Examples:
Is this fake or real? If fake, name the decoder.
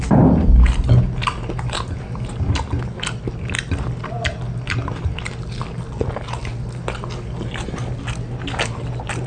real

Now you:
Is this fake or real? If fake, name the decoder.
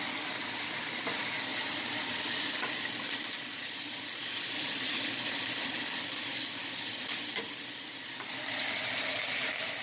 real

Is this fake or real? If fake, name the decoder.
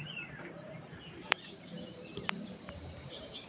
fake, vocoder, BigVGAN v2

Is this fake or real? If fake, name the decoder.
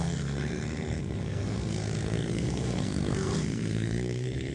fake, codec, SNAC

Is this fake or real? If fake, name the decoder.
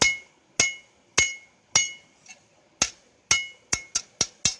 real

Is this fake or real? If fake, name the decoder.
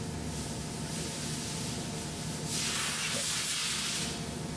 real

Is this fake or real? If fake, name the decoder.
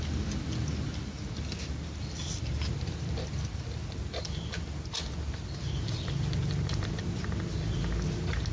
real